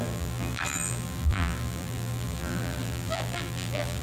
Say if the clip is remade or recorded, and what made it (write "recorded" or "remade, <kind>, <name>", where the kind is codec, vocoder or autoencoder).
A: remade, vocoder, BigVGAN v2